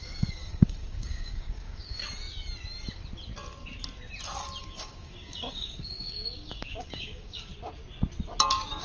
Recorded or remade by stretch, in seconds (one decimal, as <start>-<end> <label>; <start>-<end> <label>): 0.0-2.0 remade; 2.0-4.6 recorded; 4.6-7.5 remade; 7.5-8.8 recorded